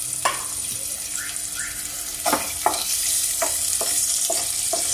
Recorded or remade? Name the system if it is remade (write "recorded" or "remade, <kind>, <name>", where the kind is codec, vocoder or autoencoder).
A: remade, vocoder, BigVGAN v2